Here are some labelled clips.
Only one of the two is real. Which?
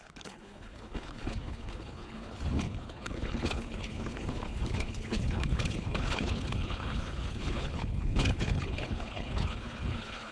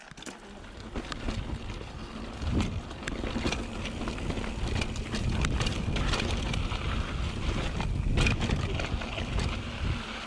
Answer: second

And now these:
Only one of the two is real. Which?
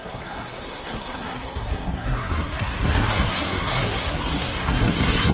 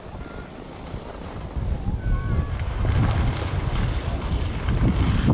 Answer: second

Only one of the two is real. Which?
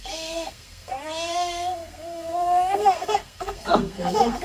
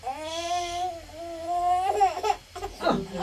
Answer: second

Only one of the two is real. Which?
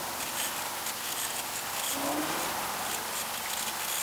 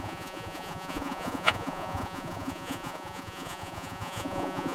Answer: first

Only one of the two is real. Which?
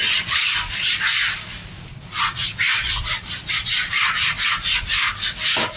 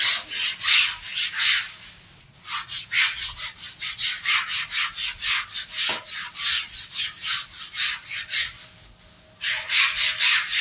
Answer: second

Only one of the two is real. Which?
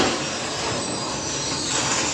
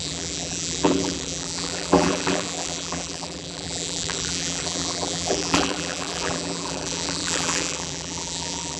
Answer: first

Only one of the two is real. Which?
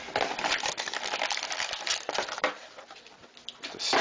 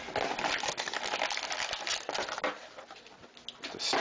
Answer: second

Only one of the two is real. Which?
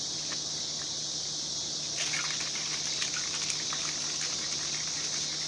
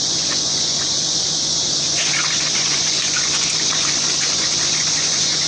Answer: first